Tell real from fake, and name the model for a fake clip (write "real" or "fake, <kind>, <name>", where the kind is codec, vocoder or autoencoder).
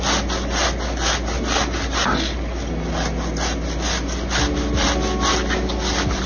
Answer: real